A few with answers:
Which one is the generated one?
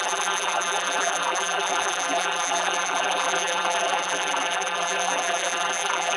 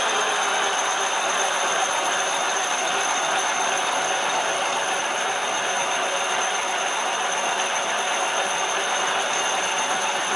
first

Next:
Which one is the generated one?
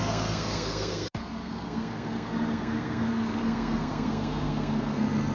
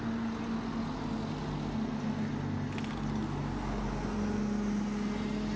first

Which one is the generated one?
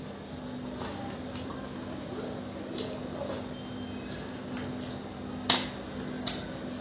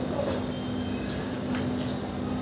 second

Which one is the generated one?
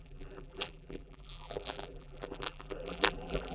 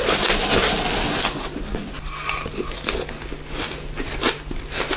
first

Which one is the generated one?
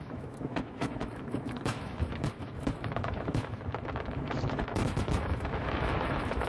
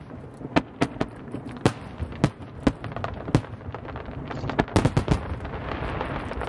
first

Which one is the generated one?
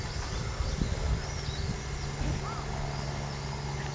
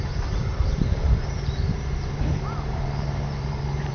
second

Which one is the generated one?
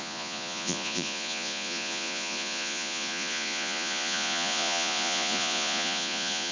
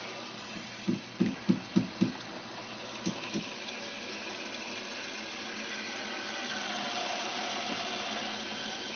first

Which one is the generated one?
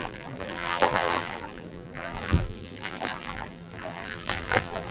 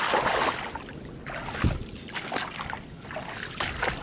first